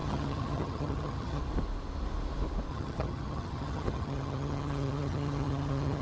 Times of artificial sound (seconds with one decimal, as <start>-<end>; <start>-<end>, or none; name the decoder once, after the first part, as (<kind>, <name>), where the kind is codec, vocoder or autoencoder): 0.0-1.4 (vocoder, HiFi-GAN); 2.7-6.0